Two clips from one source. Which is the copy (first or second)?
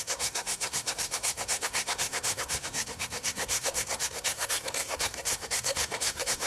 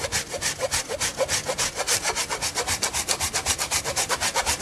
first